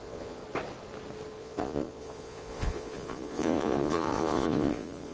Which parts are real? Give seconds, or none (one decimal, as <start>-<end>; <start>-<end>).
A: 0.4-1.4